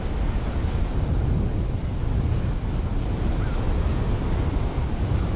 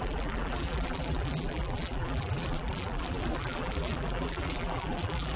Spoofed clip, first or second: second